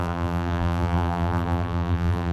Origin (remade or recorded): remade